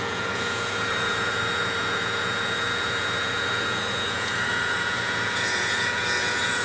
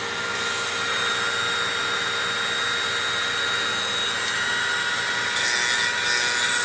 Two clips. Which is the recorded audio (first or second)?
second